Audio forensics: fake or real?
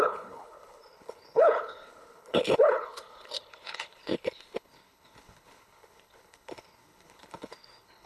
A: fake